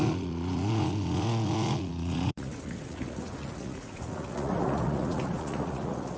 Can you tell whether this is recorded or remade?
remade